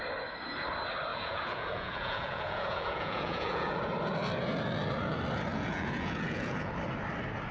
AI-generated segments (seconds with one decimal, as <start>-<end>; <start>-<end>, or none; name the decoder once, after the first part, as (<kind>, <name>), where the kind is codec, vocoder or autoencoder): 1.1-3.8 (vocoder, Vocos); 5.5-6.7

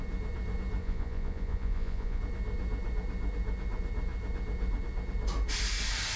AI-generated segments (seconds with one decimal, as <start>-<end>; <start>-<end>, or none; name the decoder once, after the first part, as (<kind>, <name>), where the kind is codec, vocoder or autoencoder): 0.8-2.2 (vocoder, Vocos)

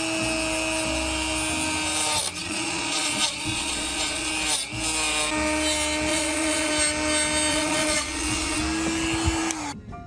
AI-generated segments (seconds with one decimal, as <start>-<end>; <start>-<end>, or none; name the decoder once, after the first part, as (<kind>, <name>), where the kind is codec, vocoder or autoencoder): 2.4-4.3 (vocoder, Vocos); 6.1-6.7; 7.5-8.6

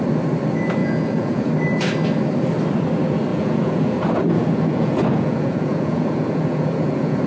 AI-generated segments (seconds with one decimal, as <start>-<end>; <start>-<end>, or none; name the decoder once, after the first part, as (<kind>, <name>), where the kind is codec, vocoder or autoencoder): 0.8-1.5 (vocoder, Vocos); 3.3-7.3

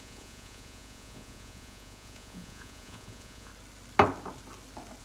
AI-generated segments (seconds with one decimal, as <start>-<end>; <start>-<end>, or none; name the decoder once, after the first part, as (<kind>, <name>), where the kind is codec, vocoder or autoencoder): 0.0-3.5 (vocoder, Vocos)

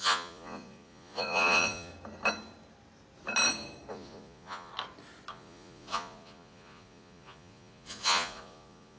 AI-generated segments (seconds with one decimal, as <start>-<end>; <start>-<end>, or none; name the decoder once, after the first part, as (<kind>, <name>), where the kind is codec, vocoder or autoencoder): 0.0-1.9 (vocoder, Vocos); 3.9-4.7; 5.3-9.0